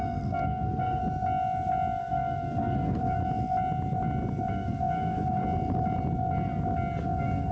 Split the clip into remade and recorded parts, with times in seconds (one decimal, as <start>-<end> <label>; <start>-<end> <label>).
0.0-1.0 remade; 1.0-2.0 recorded; 2.0-3.2 remade; 3.2-4.5 recorded; 4.5-5.4 remade; 5.4-7.0 recorded; 7.0-7.5 remade